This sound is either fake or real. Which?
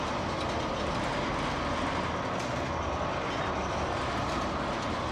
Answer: real